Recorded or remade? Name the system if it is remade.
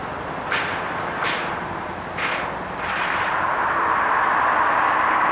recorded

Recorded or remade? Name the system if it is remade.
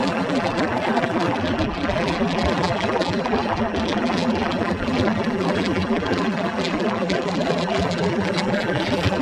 remade, vocoder, BigVGAN v2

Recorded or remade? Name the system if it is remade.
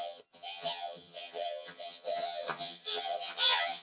remade, vocoder, HiFi-GAN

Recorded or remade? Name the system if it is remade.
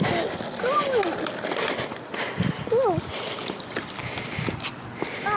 recorded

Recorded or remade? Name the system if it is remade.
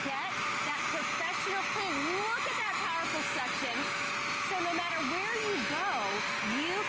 recorded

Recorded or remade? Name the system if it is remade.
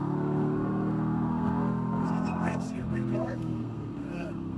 remade, codec, SNAC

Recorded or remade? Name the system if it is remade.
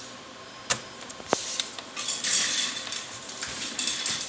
remade, vocoder, BigVGAN v2